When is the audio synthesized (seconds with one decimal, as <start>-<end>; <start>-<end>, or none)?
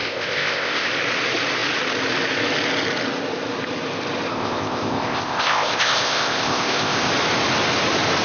0.0-0.9; 4.3-7.1